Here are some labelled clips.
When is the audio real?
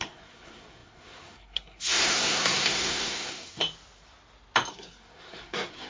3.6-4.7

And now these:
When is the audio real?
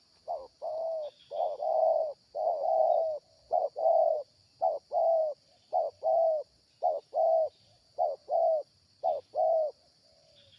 0.0-10.6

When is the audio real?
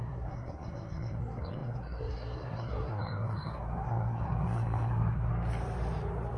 5.3-6.4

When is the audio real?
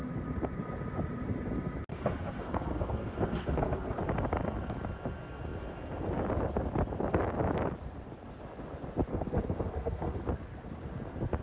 0.0-1.9; 4.0-9.1; 10.2-11.4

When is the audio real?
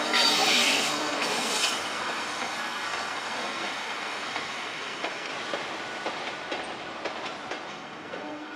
5.3-7.7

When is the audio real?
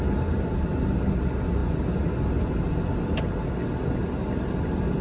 0.0-5.0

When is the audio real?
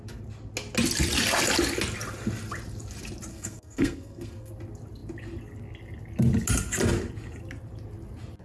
0.0-3.3; 4.5-8.4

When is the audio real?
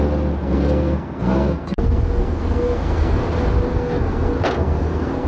0.0-0.4; 3.2-3.7